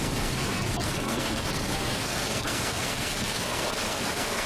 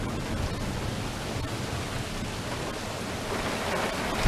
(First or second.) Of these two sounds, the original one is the second